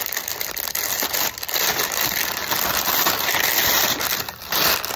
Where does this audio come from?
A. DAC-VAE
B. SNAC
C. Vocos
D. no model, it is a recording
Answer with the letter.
D